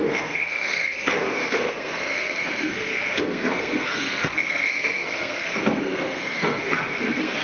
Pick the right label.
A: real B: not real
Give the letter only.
B